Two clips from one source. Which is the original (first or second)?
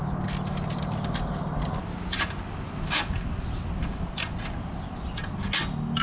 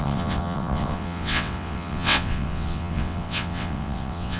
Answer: first